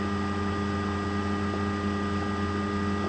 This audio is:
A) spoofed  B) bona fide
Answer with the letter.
B